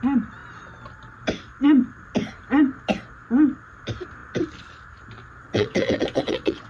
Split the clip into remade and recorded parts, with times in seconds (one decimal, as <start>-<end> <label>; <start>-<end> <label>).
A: 0.0-5.4 recorded; 5.4-6.7 remade